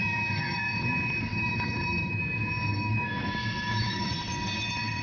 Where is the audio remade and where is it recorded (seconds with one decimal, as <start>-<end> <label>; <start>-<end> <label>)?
0.0-0.7 remade; 0.7-1.3 recorded; 1.3-2.2 remade; 2.2-2.7 recorded; 2.7-4.1 remade; 4.1-5.0 recorded